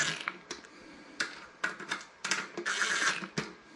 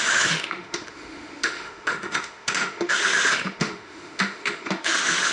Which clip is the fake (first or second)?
second